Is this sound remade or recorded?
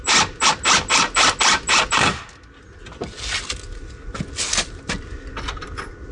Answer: recorded